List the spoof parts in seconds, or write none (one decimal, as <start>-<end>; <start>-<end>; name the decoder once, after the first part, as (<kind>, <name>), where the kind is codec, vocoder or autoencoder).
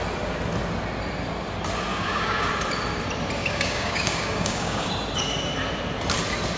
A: 1.9-2.5 (codec, DAC); 3.4-4.9